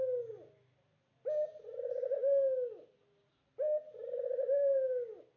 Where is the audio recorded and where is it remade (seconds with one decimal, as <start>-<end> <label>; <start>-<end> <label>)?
0.0-5.4 recorded